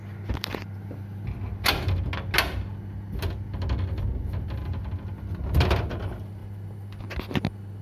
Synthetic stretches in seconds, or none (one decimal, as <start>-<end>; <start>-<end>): 6.4-7.0